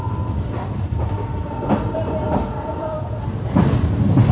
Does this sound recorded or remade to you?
recorded